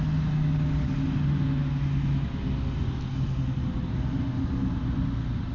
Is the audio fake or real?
real